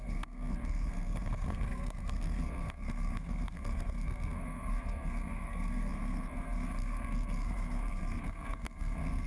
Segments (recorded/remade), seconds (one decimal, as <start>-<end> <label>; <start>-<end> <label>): 0.0-9.3 remade